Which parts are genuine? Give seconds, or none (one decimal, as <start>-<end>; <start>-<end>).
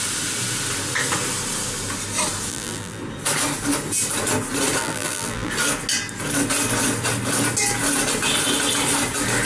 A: 0.0-2.5; 3.0-4.8; 5.5-9.5